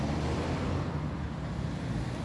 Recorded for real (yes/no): yes